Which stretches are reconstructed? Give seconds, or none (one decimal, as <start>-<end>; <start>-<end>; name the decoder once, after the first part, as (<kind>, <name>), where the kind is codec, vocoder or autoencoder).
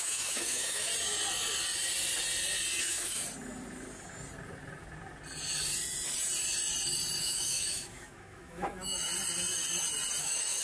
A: 0.0-0.9 (autoencoder, DAC-VAE); 2.8-3.2; 7.2-9.1; 10.2-10.6